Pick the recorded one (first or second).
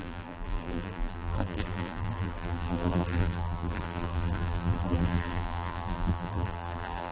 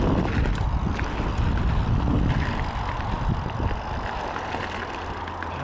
second